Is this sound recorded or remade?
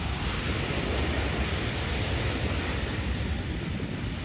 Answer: remade